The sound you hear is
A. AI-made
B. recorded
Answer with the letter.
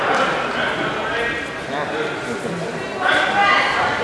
B